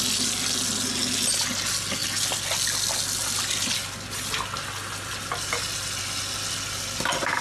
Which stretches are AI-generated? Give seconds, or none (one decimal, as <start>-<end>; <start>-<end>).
none